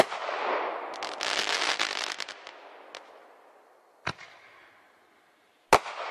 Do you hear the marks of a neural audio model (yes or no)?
no